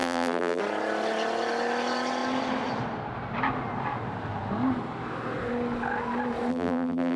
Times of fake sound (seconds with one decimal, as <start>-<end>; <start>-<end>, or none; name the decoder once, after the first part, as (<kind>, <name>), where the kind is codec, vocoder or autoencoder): 0.0-0.6 (vocoder, BigVGAN v2); 6.5-7.2